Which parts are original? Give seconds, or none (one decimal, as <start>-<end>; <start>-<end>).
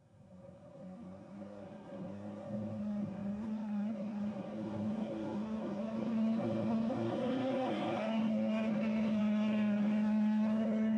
none